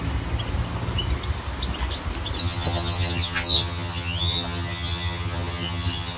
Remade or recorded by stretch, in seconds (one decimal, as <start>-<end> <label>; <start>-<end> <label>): 0.0-2.4 recorded; 2.4-6.2 remade